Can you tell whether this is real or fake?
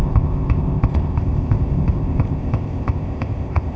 fake